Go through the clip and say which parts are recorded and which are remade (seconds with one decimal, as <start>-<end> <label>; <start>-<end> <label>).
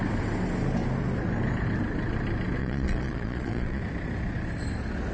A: 0.0-2.6 recorded; 2.6-3.8 remade; 3.8-5.1 recorded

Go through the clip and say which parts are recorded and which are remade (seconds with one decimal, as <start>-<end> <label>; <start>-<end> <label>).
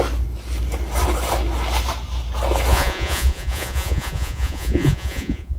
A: 0.0-2.7 recorded; 2.7-5.6 remade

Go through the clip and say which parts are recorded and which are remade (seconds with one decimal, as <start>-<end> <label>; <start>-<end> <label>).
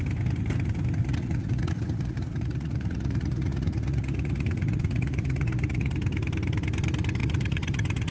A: 0.0-1.0 recorded; 1.0-5.9 remade; 5.9-7.2 recorded; 7.2-8.1 remade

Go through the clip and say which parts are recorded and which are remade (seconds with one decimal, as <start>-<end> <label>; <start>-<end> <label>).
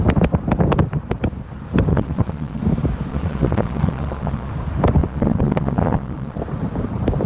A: 0.0-1.9 recorded; 1.9-2.6 remade; 2.6-3.1 recorded; 3.1-4.5 remade; 4.5-5.0 recorded; 5.0-6.4 remade; 6.4-7.3 recorded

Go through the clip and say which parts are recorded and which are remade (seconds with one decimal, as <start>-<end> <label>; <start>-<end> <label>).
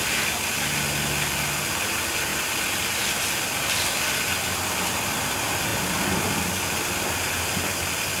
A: 0.0-8.2 recorded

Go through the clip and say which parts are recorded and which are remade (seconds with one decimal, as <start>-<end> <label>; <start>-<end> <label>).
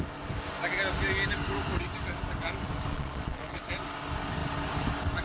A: 0.0-2.9 recorded; 2.9-3.7 remade; 3.7-5.2 recorded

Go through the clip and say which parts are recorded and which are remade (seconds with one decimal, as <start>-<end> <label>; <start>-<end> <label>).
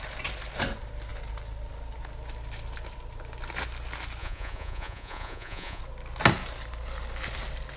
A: 0.0-4.2 recorded; 4.2-5.8 remade; 5.8-7.8 recorded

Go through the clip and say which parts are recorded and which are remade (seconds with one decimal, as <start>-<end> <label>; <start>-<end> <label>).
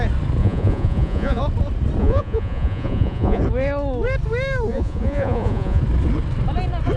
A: 0.0-0.4 recorded; 0.4-1.4 remade; 1.4-2.0 recorded; 2.0-3.4 remade; 3.4-4.7 recorded; 4.7-5.8 remade; 5.8-7.0 recorded